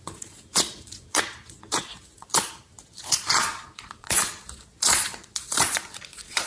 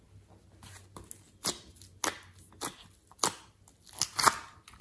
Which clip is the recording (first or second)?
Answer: second